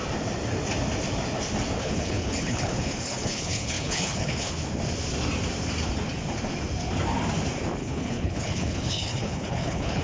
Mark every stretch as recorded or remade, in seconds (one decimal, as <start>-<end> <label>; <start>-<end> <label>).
0.0-1.8 recorded; 1.8-4.5 remade; 4.5-7.8 recorded; 7.8-10.0 remade